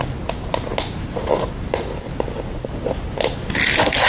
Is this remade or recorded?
recorded